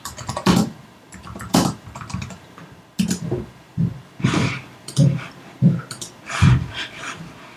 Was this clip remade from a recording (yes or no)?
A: yes